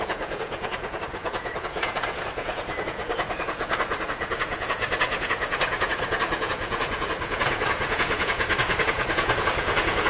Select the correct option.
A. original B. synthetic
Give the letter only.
B